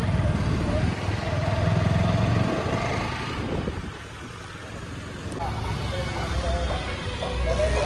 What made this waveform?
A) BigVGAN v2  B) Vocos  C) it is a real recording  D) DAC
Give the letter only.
C